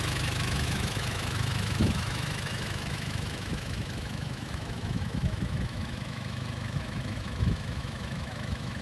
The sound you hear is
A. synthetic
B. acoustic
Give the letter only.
A